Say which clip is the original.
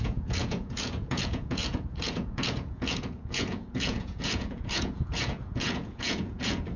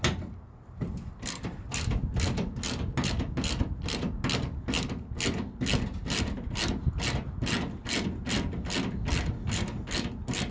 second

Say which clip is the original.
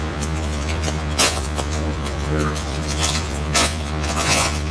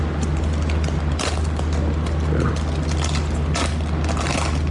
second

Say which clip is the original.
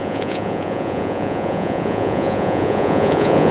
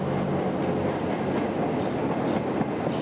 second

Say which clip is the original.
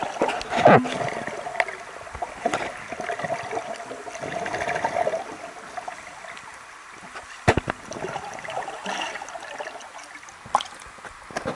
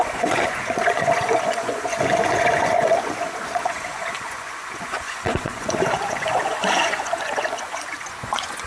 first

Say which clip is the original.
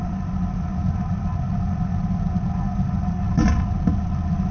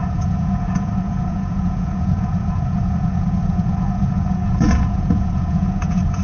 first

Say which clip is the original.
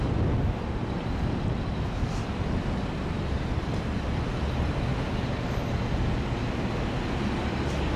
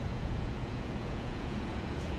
first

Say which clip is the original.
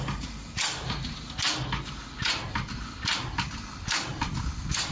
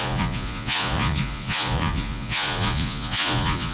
first